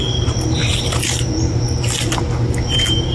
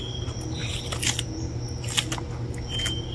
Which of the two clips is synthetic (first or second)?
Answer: first